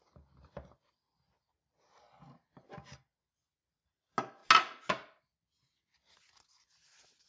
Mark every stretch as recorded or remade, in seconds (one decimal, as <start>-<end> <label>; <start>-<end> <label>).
0.0-7.3 recorded